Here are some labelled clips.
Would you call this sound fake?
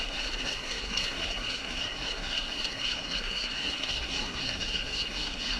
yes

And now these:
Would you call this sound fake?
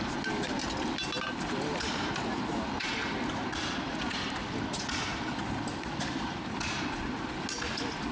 no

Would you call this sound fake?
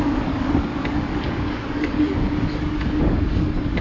yes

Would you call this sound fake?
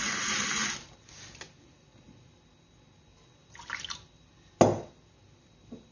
no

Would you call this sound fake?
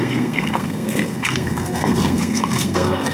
yes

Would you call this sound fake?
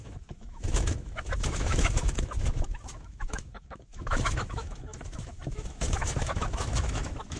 yes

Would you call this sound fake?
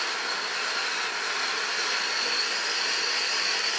no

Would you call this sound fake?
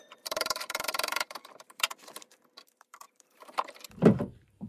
yes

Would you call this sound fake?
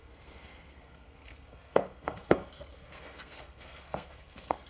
yes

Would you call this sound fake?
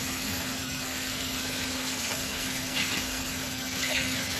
yes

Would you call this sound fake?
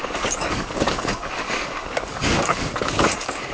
yes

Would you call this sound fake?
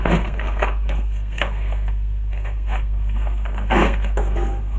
yes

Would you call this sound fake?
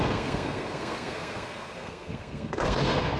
yes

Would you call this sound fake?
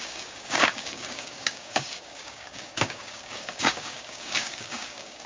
yes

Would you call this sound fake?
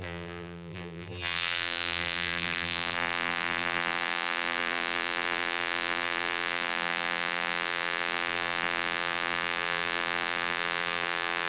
yes